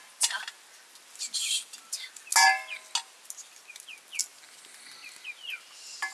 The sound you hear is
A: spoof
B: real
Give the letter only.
B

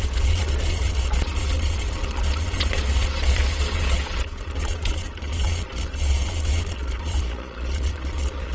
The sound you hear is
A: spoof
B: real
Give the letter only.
A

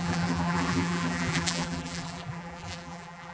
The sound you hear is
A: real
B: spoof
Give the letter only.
B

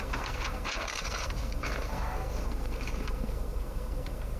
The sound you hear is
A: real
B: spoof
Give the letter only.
B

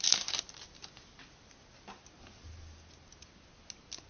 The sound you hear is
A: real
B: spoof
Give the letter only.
A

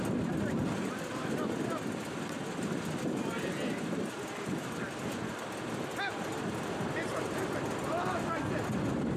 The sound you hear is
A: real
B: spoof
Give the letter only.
A